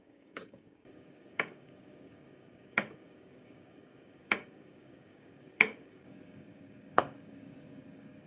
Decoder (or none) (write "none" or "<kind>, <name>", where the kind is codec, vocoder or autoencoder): codec, DAC